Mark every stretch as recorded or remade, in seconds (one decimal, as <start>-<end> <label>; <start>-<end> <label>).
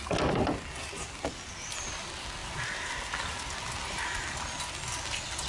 0.0-5.5 recorded